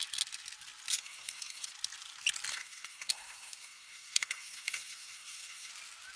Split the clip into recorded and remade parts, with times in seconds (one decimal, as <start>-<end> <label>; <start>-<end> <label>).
0.0-0.9 recorded; 0.9-1.7 remade; 1.7-2.5 recorded; 2.5-5.7 remade; 5.7-6.2 recorded